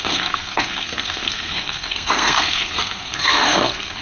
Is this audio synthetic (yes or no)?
yes